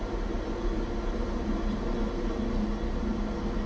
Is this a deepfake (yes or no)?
no